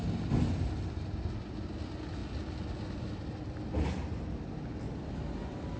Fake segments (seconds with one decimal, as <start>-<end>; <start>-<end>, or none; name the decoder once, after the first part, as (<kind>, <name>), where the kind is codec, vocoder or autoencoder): none

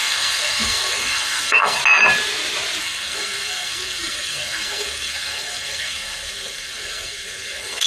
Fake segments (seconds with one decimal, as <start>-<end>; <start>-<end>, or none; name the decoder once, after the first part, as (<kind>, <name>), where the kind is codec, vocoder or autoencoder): 0.0-1.8 (codec, SNAC); 2.8-7.9

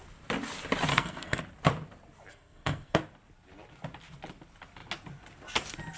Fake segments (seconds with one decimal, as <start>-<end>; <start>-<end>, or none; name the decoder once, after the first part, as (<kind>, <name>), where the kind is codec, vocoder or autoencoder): 0.9-1.4 (codec, SNAC); 2.3-3.0

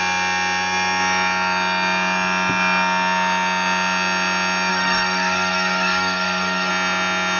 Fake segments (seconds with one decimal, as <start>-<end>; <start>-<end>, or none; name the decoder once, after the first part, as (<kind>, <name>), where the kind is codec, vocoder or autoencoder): 4.7-6.7 (codec, SNAC)